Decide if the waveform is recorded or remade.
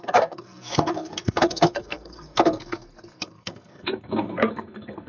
remade